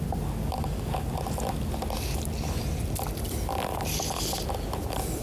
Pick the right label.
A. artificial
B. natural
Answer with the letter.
B